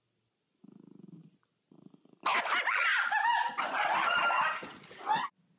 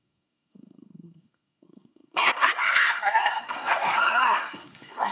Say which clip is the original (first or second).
first